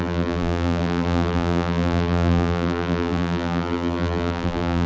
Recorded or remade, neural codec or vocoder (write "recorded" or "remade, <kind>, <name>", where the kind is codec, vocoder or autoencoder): remade, vocoder, BigVGAN v2